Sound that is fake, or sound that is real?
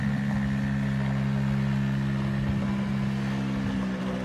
real